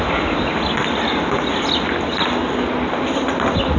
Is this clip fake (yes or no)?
no